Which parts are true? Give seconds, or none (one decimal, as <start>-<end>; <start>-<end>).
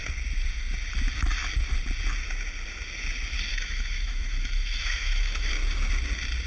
0.0-3.5; 5.5-6.5